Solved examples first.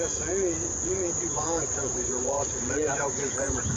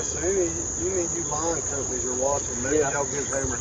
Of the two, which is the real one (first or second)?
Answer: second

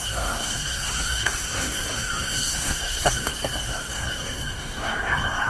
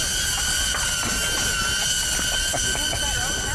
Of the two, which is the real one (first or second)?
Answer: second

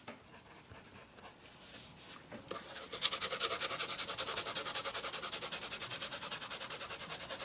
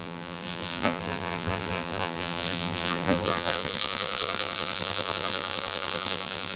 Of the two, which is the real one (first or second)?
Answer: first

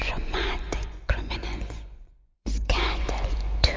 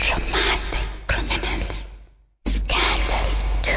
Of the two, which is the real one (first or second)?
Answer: second